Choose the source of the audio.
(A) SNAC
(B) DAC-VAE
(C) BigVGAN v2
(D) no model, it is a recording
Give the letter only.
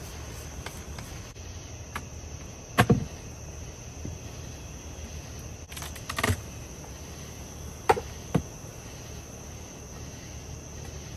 D